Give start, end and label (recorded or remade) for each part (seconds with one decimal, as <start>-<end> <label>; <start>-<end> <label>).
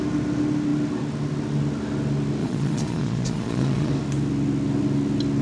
0.0-2.4 recorded; 2.4-3.9 remade; 3.9-5.4 recorded